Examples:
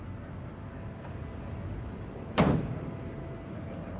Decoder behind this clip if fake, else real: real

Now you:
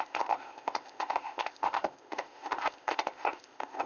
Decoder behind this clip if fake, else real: fake, codec, ZipCodec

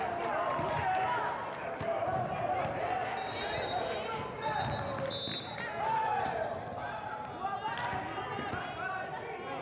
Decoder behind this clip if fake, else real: real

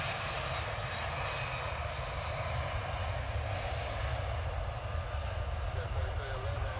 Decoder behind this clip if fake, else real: real